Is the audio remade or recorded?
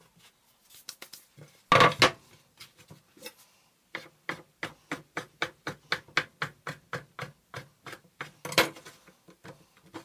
recorded